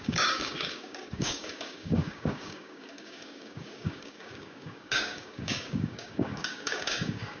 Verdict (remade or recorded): remade